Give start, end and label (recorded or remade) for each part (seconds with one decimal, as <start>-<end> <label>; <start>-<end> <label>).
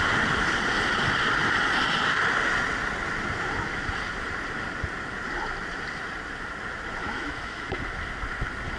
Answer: 0.0-7.0 recorded; 7.0-7.8 remade; 7.8-8.8 recorded